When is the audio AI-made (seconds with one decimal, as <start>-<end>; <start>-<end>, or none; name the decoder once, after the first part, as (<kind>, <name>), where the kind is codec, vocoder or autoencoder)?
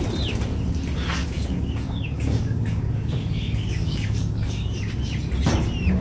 1.2-4.8 (codec, DAC)